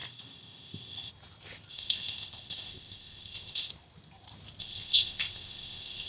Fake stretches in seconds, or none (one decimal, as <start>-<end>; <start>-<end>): 0.0-1.1; 1.7-3.7; 4.6-6.1